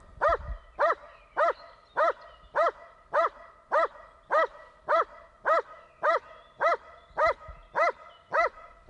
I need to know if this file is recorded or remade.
recorded